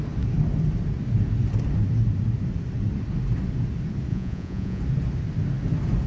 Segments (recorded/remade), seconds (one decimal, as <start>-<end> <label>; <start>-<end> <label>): 0.0-4.1 recorded; 4.1-4.8 remade; 4.8-6.1 recorded